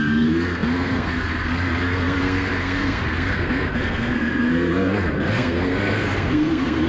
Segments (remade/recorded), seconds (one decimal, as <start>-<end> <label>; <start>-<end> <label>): 0.0-6.9 remade